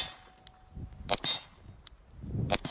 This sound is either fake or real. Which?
real